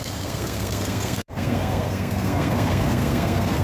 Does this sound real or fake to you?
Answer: fake